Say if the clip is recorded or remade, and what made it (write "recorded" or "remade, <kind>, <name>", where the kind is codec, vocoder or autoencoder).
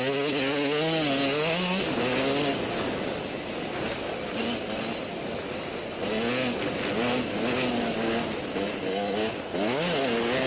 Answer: recorded